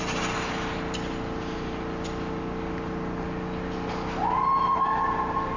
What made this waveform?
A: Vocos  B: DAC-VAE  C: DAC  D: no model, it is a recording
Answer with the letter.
D